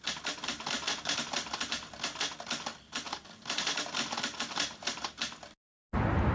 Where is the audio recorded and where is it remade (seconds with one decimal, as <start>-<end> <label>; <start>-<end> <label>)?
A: 0.0-2.7 recorded; 2.7-5.1 remade; 5.1-6.3 recorded